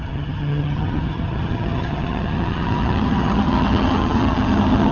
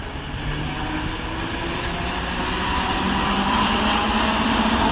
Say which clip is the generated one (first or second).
first